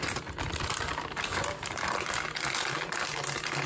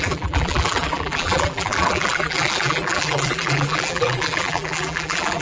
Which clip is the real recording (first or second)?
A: first